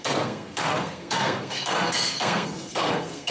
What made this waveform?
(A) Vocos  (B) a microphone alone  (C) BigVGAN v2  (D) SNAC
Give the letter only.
D